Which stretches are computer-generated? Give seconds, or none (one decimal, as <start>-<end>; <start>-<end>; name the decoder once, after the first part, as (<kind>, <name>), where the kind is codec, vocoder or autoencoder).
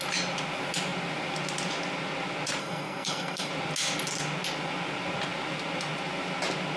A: 2.6-3.5 (codec, SNAC)